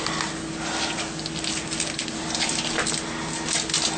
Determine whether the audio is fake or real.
real